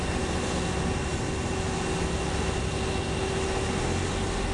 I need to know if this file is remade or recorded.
recorded